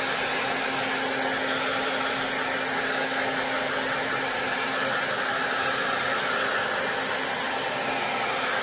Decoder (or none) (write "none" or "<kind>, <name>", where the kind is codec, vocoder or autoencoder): none